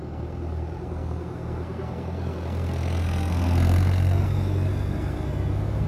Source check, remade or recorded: remade